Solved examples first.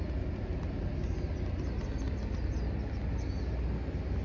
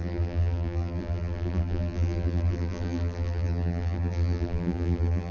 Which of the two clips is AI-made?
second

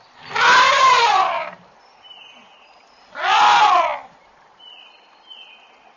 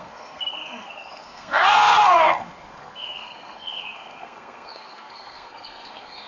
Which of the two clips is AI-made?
second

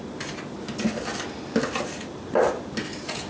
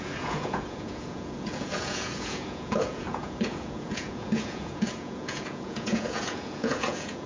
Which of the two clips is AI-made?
second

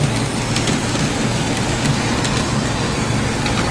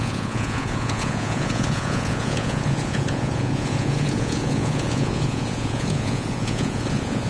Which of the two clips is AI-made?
second